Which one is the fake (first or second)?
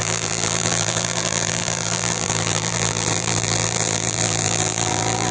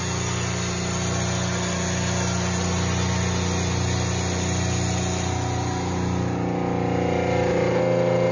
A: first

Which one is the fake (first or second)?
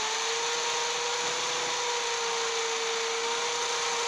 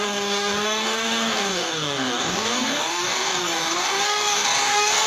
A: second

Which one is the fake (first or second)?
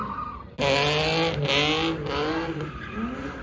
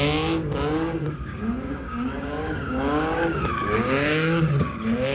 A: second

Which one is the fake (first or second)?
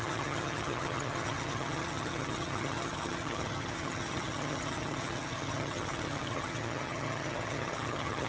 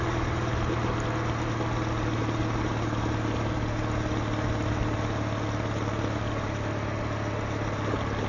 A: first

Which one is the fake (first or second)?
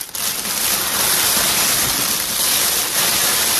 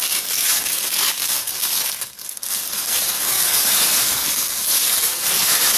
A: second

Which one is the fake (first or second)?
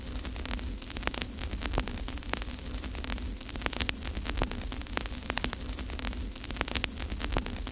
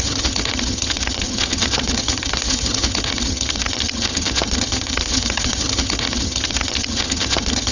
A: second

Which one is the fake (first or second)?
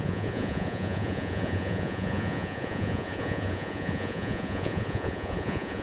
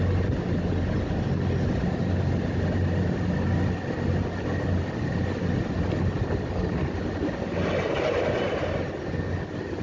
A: first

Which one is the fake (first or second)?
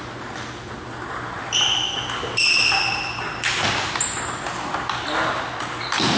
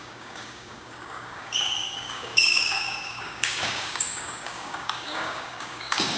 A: second